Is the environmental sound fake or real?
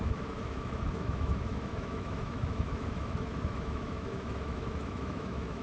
fake